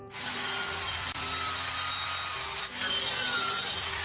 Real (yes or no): yes